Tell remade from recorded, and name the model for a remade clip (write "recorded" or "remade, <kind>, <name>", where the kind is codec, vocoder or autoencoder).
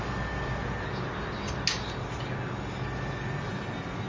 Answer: recorded